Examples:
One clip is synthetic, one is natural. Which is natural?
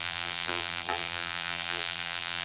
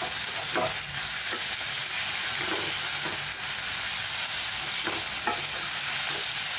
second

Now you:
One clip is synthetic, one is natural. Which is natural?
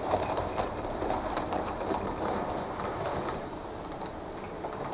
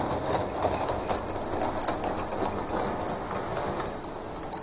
second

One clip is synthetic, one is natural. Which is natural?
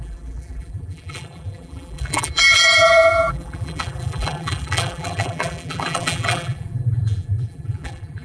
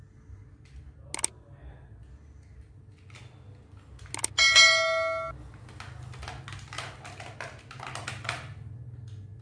second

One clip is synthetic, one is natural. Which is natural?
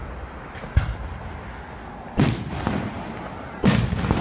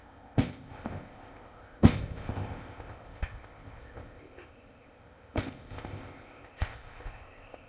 first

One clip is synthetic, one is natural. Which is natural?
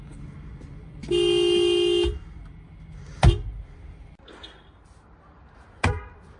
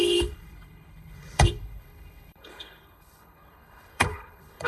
first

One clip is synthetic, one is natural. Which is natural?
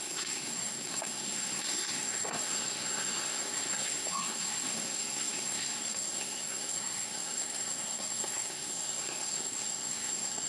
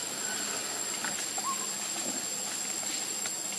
second